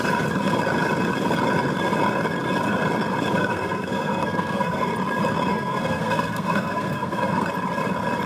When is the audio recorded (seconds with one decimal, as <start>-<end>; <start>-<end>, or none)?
0.0-3.4; 4.9-5.5; 7.5-8.3